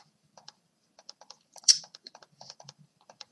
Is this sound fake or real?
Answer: fake